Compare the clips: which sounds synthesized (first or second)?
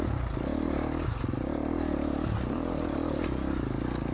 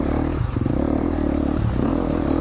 second